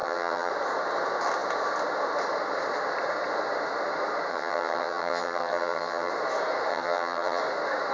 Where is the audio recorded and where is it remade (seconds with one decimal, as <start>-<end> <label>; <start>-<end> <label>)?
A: 0.0-0.5 remade; 0.5-4.3 recorded; 4.3-6.1 remade; 6.1-6.7 recorded; 6.7-7.4 remade; 7.4-7.9 recorded